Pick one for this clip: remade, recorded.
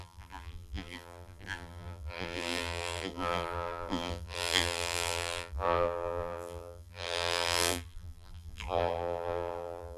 remade